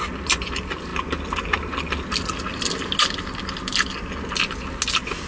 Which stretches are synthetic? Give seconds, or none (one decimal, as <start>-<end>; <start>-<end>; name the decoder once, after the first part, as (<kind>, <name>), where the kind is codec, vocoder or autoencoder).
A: none